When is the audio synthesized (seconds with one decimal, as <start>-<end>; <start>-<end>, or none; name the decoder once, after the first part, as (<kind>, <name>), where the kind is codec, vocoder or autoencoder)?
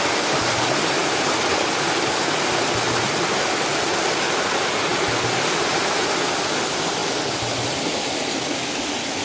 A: none